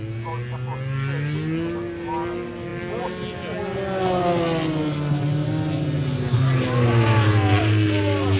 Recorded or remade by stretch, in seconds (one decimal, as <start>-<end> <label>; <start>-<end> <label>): 0.0-8.4 recorded